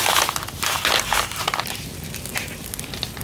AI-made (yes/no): no